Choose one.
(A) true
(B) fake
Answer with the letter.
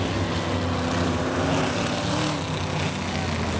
A